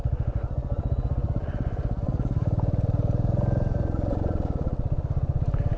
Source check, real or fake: fake